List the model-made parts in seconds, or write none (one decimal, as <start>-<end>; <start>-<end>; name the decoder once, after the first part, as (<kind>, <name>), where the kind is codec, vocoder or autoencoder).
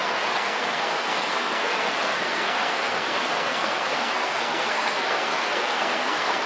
0.0-6.5 (codec, SNAC)